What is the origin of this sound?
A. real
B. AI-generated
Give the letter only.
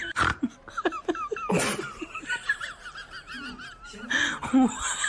A